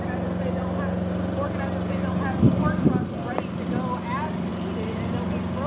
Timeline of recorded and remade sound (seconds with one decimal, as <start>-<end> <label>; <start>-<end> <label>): 0.0-5.7 recorded